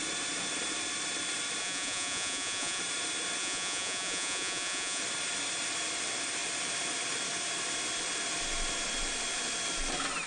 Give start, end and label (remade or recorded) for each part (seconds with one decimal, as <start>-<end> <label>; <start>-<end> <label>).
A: 0.0-1.6 recorded; 1.6-2.8 remade; 2.8-3.4 recorded; 3.4-5.0 remade; 5.0-10.3 recorded